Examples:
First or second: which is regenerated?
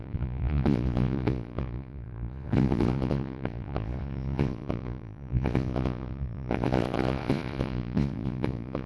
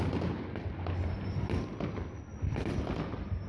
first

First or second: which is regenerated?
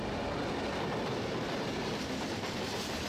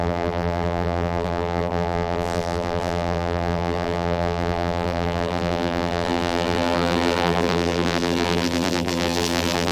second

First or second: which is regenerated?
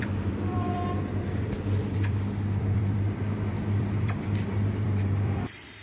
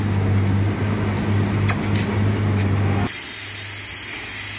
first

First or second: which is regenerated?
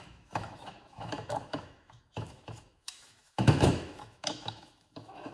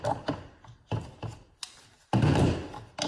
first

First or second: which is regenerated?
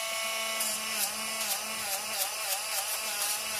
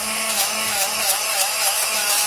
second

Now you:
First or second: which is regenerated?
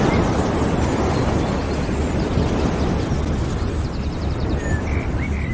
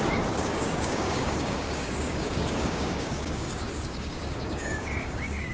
second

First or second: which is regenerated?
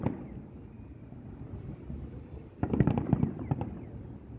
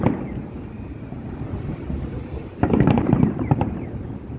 second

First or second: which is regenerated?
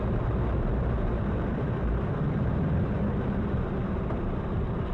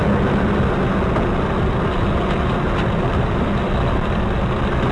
first